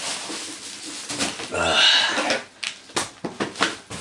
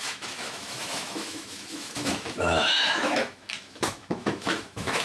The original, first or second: first